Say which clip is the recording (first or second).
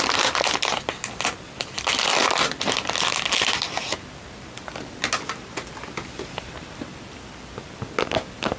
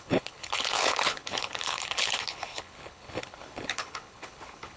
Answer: first